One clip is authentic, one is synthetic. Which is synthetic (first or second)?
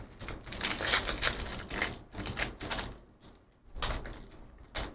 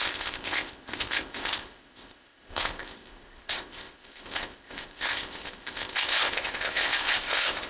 second